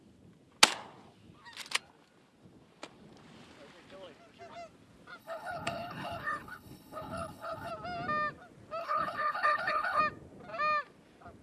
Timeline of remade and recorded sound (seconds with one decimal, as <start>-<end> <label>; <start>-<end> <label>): 0.0-5.2 recorded; 5.2-7.7 remade; 7.7-8.8 recorded; 8.8-10.0 remade; 10.0-11.4 recorded